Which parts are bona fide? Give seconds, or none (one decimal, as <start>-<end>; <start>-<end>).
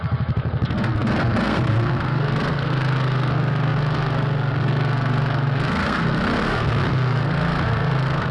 none